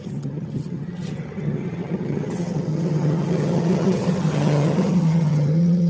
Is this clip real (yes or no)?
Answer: no